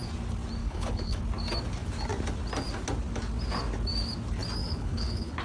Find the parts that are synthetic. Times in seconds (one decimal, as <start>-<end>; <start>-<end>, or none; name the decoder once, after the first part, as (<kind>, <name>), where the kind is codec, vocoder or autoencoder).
0.6-1.2 (codec, HILCodec); 4.6-5.4